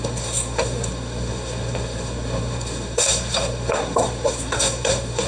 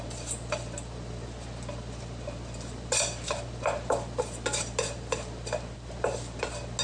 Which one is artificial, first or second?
first